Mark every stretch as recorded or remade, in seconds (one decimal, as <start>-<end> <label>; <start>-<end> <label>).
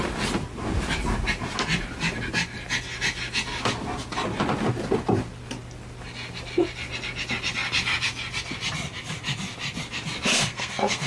0.0-10.3 recorded; 10.3-11.1 remade